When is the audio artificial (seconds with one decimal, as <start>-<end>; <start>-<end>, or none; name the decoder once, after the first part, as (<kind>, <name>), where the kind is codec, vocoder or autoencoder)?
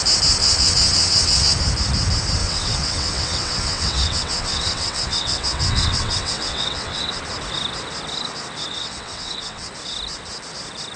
0.4-1.6 (vocoder, WaveNeXt); 2.4-7.2; 8.7-9.7